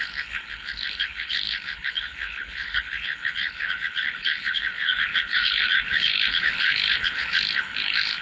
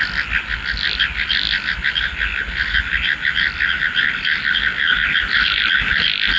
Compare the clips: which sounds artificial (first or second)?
first